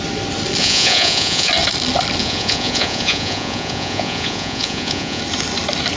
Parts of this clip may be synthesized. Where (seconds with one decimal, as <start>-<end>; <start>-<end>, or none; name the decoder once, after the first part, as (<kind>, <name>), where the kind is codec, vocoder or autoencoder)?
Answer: 0.6-1.5 (vocoder, Vocos); 2.2-5.2